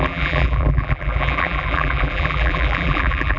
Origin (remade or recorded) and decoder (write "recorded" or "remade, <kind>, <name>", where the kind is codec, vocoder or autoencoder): remade, vocoder, BigVGAN v2